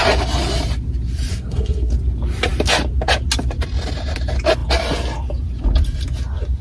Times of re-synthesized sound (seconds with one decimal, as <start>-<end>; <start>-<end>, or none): 1.3-1.9